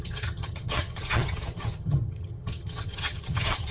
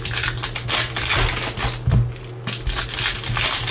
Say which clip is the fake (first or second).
first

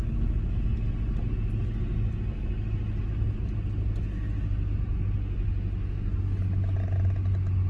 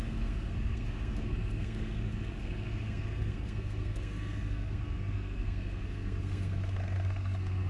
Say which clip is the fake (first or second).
second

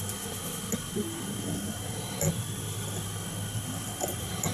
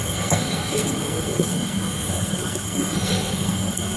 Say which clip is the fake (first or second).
second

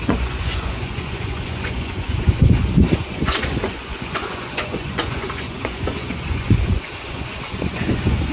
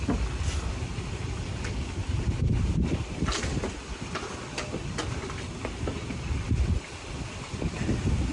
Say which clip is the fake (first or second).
first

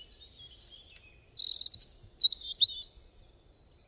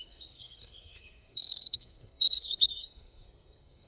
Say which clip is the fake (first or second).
second